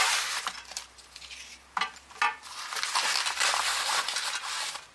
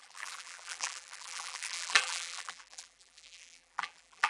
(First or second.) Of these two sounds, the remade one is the second